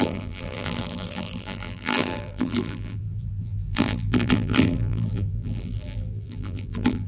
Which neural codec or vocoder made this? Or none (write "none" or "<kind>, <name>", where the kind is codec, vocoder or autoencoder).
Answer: vocoder, BigVGAN v2